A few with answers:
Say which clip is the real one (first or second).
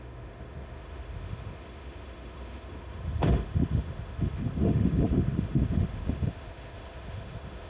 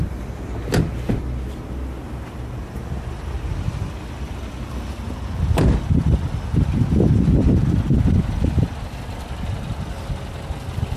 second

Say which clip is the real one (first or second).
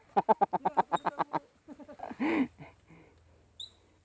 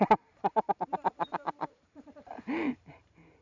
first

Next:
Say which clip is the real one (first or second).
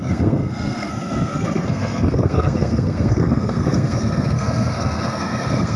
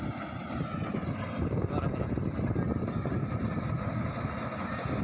second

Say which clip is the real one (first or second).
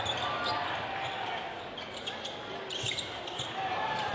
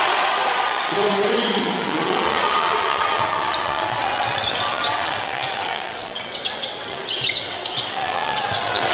first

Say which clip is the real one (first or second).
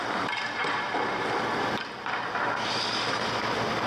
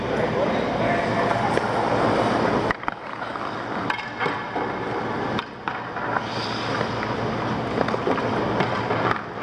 second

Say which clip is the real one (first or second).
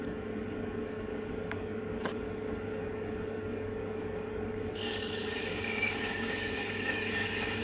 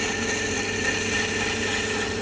second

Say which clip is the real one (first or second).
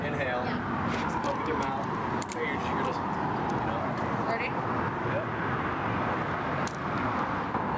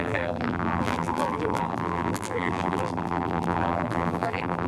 first